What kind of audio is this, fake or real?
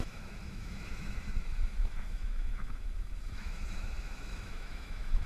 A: fake